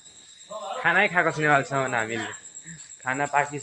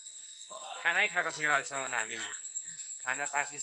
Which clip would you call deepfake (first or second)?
second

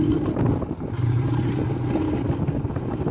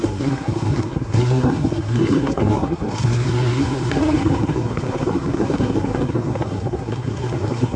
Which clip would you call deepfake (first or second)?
second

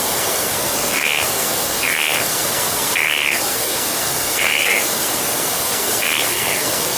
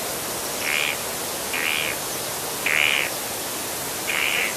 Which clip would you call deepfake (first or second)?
first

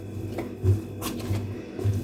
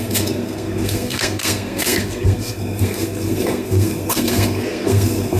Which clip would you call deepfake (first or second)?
second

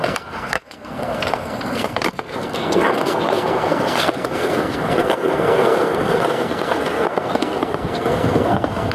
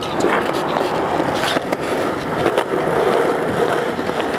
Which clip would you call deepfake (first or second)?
first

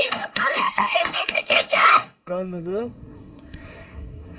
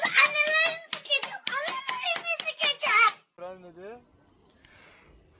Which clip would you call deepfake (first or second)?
first